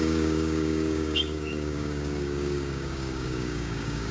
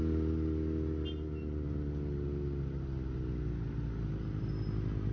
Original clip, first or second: second